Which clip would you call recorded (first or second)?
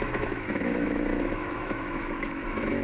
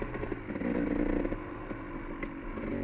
second